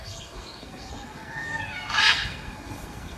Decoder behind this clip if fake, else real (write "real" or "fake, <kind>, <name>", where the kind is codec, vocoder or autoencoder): fake, codec, SNAC